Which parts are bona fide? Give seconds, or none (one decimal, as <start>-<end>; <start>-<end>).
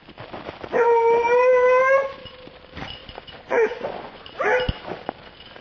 0.0-3.0; 4.3-5.6